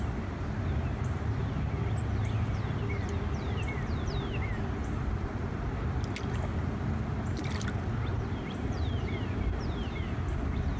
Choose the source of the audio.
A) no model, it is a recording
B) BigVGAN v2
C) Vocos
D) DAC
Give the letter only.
A